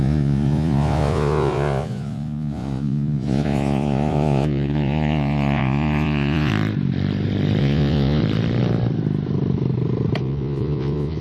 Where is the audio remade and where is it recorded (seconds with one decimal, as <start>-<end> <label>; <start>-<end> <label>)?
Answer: 0.0-6.5 remade; 6.5-7.6 recorded; 7.6-8.2 remade; 8.2-10.2 recorded; 10.2-11.2 remade